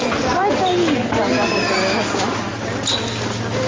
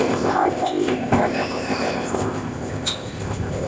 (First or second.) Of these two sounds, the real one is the first